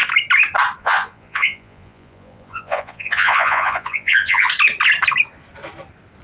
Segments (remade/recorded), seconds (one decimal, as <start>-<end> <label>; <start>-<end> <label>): 0.0-0.8 recorded; 0.8-4.5 remade; 4.5-6.2 recorded

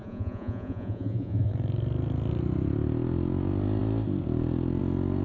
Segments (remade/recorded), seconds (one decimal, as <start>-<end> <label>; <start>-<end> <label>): 0.0-1.5 remade; 1.5-5.2 recorded

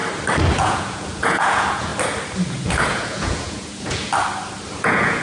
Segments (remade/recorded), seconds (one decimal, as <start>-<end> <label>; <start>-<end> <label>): 0.0-0.5 recorded; 0.5-1.9 remade; 1.9-2.5 recorded; 2.5-4.1 remade; 4.1-4.8 recorded; 4.8-5.2 remade

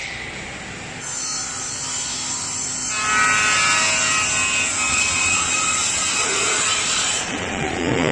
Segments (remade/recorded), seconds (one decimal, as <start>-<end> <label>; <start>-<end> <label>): 0.0-4.9 recorded; 4.9-8.1 remade

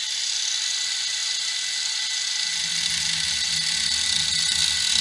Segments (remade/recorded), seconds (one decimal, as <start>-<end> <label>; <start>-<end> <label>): 0.0-5.0 recorded